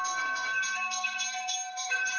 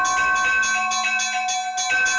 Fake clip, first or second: first